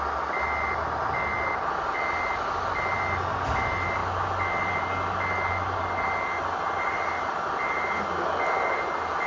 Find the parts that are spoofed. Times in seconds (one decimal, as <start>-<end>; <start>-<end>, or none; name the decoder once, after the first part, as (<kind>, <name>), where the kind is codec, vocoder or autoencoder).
none